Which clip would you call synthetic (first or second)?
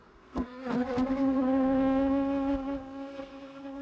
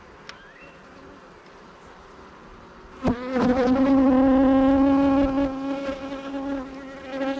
first